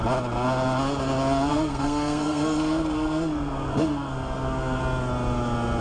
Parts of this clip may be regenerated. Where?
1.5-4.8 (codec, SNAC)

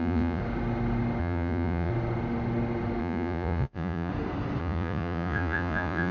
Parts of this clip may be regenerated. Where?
0.0-0.4 (vocoder, Vocos); 1.2-1.9; 3.0-4.1; 4.6-6.1

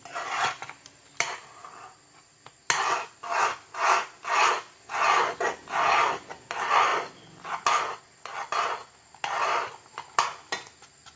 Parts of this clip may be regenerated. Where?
none

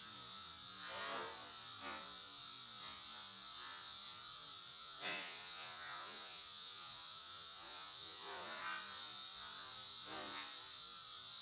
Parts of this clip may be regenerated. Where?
4.7-8.6 (vocoder, Vocos)

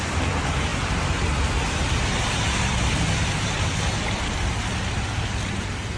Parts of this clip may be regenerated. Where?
none